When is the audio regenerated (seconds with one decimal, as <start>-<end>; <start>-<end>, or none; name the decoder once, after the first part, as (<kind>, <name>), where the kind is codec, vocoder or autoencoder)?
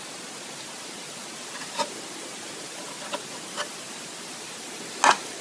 none